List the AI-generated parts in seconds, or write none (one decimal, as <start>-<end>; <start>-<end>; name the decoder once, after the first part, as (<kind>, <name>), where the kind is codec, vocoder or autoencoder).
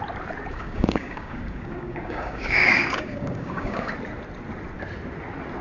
0.5-3.9 (codec, DAC)